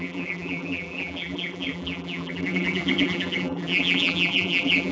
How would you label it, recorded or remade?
remade